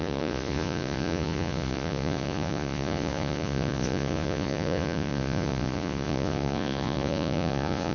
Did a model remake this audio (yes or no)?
yes